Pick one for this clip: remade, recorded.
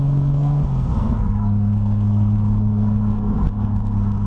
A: remade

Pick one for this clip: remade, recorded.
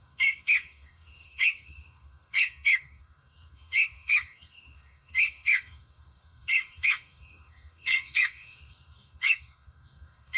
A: remade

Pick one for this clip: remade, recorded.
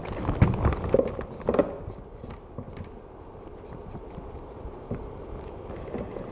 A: recorded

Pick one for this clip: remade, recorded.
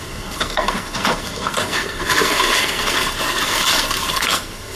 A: remade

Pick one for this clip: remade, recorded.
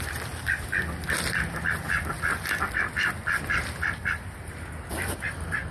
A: recorded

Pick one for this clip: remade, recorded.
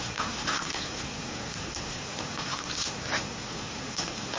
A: remade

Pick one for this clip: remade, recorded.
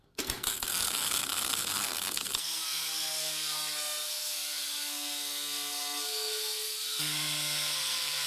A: remade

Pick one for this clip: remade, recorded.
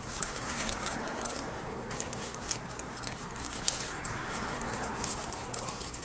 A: remade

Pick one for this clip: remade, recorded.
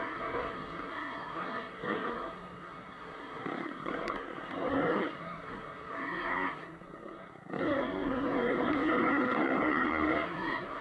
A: remade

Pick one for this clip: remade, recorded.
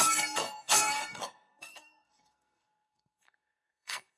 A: remade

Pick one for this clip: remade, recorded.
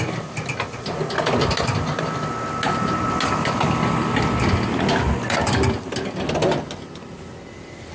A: recorded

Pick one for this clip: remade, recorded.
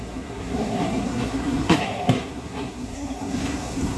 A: remade